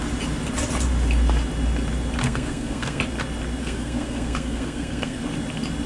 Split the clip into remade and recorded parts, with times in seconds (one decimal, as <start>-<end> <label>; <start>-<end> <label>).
0.0-2.2 recorded; 2.2-3.0 remade; 3.0-3.6 recorded; 3.6-5.2 remade; 5.2-5.9 recorded